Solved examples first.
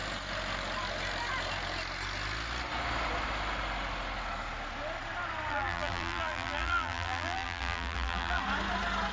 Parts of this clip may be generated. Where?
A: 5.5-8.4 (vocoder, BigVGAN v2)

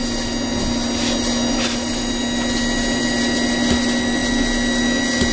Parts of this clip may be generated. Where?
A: none

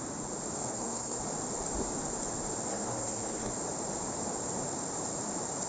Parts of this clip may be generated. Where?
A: 0.7-1.2 (codec, SNAC); 2.7-3.5

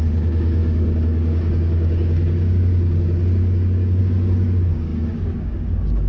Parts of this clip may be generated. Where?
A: 0.0-6.1 (codec, DAC)

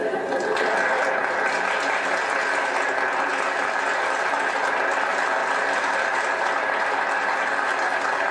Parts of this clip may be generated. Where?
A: none

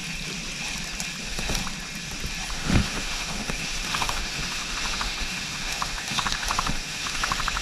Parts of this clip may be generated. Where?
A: 1.2-1.6 (autoencoder, DAC-VAE); 2.5-7.6